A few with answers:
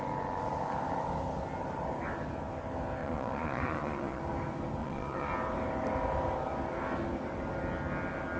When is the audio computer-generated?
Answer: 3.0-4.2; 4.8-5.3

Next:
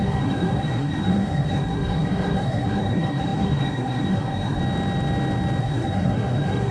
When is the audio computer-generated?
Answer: 0.0-4.6; 5.6-6.7

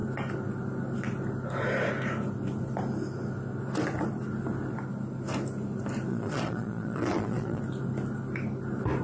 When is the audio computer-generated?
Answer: 6.1-7.6